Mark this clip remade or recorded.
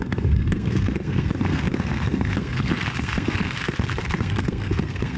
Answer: remade